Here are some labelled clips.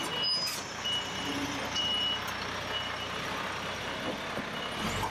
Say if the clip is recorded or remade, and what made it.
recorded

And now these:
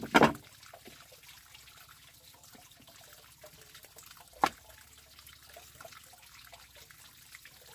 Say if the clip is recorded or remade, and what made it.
recorded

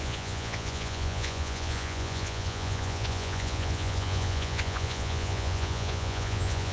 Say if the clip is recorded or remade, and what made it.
remade, vocoder, Vocos